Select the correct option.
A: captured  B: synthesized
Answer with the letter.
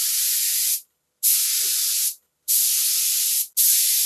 A